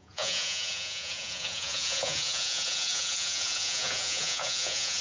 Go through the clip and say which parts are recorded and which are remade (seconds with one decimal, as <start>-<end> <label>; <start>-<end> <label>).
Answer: 0.0-5.0 remade